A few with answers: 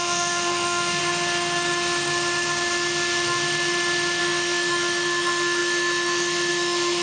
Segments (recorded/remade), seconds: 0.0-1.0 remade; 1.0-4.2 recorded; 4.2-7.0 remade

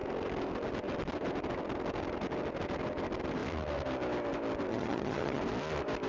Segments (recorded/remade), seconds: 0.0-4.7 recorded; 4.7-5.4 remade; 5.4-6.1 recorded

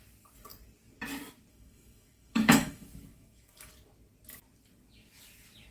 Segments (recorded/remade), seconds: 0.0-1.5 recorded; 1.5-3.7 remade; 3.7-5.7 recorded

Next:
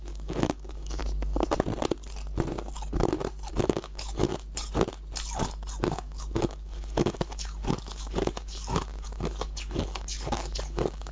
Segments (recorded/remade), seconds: 0.0-1.0 remade; 1.0-3.5 recorded; 3.5-4.3 remade; 4.3-5.8 recorded; 5.8-11.1 remade

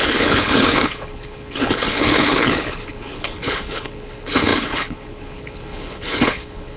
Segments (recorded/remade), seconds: 0.0-6.8 remade

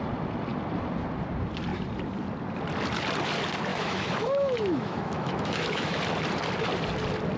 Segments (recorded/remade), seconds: 0.0-3.7 recorded; 3.7-6.0 remade; 6.0-7.4 recorded